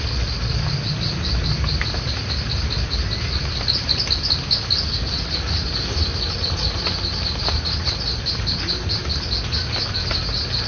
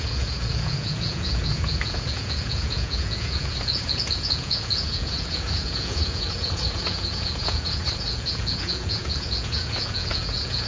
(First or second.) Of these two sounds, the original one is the first